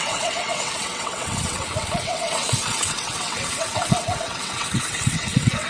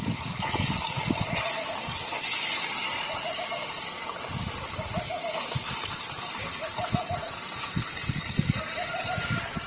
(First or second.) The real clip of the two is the second